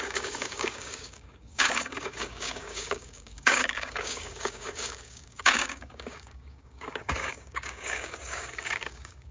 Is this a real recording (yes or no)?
no